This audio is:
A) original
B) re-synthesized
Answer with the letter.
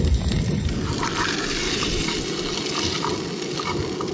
A